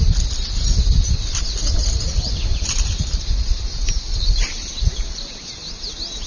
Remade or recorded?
recorded